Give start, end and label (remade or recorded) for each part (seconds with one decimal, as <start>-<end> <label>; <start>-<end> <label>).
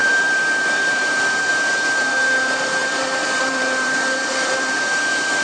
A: 0.0-1.5 remade; 1.5-2.8 recorded; 2.8-4.9 remade; 4.9-5.4 recorded